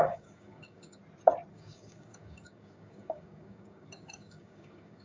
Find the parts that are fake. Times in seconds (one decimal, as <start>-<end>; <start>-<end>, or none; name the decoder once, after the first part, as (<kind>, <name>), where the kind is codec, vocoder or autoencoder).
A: 0.0-1.0 (codec, DAC); 1.5-5.0